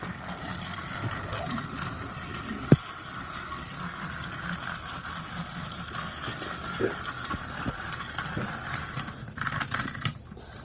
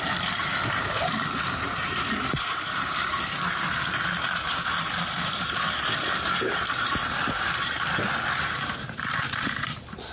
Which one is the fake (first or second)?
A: second